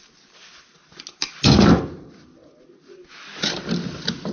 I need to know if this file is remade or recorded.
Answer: recorded